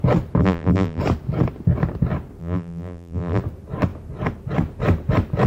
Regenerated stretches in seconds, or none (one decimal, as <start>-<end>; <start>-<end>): 0.4-1.0; 2.4-3.4

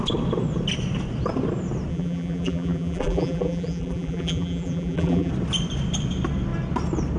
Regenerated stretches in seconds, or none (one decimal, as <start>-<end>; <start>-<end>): 1.9-5.3